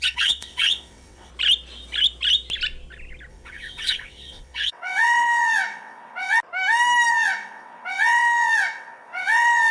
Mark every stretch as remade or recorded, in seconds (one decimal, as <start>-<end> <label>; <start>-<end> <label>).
0.0-1.3 remade; 1.3-3.3 recorded; 3.3-6.4 remade; 6.4-7.1 recorded; 7.1-9.7 remade